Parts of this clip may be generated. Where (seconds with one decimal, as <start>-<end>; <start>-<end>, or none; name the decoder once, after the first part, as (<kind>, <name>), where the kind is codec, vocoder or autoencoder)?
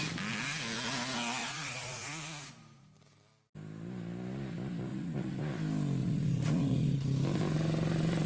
1.4-2.5 (vocoder, Vocos); 4.9-5.4; 6.0-7.0